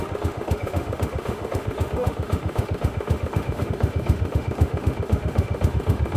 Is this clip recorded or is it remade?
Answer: remade